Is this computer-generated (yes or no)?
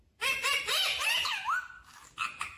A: no